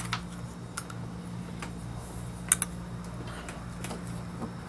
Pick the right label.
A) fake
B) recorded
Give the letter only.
B